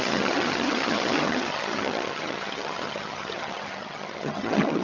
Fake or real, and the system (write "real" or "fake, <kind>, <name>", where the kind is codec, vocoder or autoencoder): fake, vocoder, HiFi-GAN